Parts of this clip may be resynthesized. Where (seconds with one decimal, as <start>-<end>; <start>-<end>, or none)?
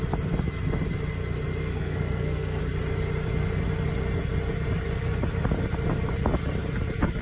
1.6-2.6